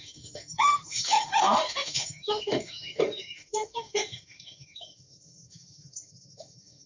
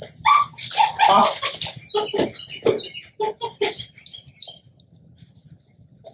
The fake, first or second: first